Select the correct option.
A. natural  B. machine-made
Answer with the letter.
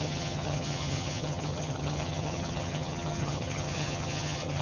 B